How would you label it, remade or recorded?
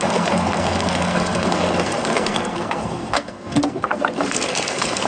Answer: remade